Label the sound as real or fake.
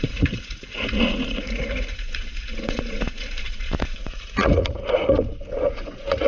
fake